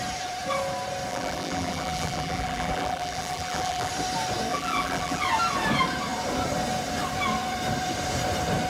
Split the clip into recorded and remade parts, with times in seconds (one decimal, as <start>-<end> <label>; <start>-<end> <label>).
0.0-1.1 recorded; 1.1-3.9 remade; 3.9-4.5 recorded; 4.5-5.2 remade; 5.2-8.7 recorded